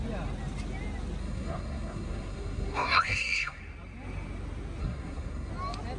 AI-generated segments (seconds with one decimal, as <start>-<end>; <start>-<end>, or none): 1.2-3.6; 4.8-5.5